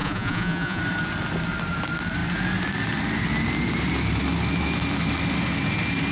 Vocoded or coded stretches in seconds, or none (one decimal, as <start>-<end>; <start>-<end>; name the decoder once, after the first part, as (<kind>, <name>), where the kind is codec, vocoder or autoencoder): 0.0-0.8 (vocoder, Vocos)